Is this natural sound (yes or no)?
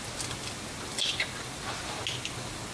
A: yes